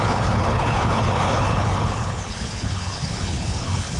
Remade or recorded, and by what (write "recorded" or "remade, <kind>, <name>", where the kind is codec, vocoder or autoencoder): remade, codec, HILCodec